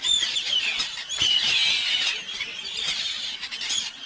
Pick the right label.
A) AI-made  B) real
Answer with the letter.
A